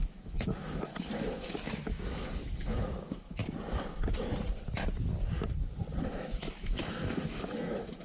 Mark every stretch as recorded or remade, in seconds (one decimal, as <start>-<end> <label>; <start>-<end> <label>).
0.0-3.4 remade; 3.4-6.0 recorded; 6.0-8.0 remade